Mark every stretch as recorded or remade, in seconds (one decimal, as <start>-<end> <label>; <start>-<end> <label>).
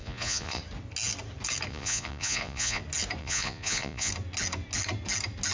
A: 0.0-0.6 remade; 0.6-1.7 recorded; 1.7-2.8 remade; 2.8-3.2 recorded; 3.2-4.1 remade; 4.1-5.5 recorded